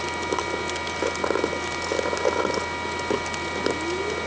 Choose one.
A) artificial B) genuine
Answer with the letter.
B